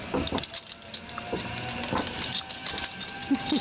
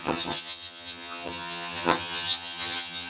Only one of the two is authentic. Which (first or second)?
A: first